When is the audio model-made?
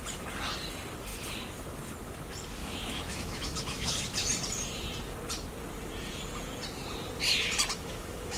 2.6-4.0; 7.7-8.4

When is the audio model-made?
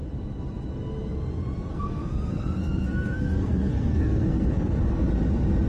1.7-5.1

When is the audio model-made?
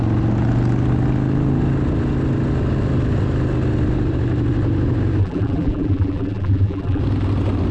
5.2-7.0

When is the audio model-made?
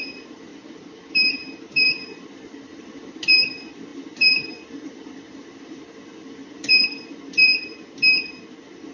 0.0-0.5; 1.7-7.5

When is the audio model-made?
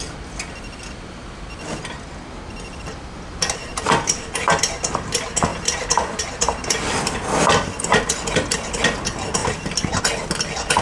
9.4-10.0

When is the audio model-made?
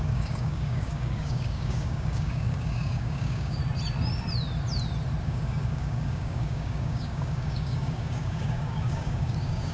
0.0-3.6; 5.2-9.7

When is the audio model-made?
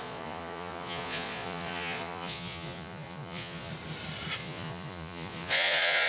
0.0-3.7; 4.4-6.1